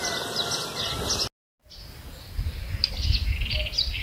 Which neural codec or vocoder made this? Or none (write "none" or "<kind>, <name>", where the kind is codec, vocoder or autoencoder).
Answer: none